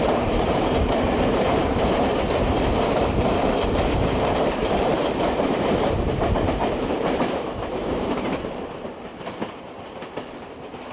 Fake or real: fake